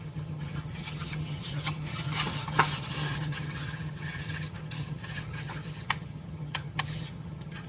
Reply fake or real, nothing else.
fake